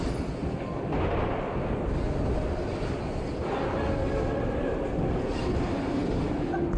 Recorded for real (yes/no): yes